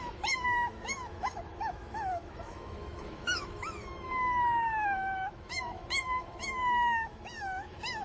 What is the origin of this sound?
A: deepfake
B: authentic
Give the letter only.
A